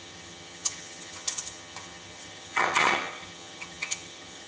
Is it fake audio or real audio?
fake